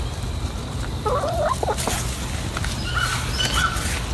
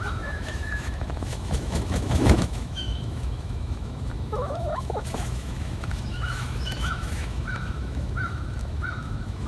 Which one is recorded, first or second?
first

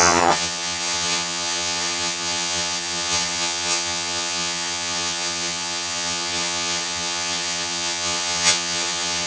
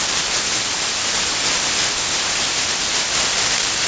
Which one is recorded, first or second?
second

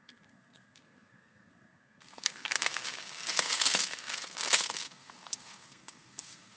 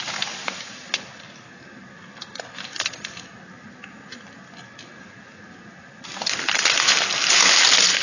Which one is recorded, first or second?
second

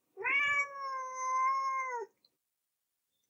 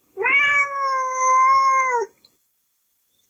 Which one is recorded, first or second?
first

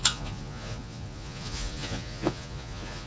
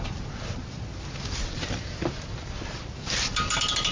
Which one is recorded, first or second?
second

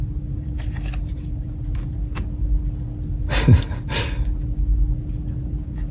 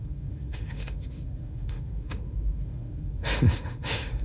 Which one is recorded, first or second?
first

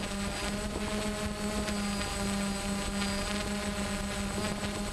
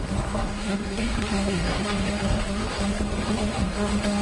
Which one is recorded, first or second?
first